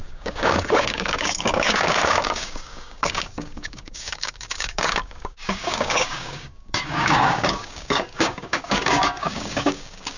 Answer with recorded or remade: remade